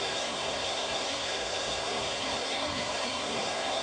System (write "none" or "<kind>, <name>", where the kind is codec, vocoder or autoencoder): codec, SNAC